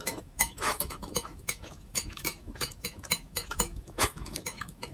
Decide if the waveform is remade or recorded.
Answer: remade